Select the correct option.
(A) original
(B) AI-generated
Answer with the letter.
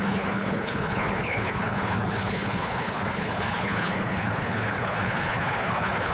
B